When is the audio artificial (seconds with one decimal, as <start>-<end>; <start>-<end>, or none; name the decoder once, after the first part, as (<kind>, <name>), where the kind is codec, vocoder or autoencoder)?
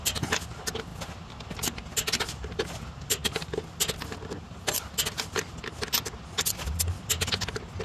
none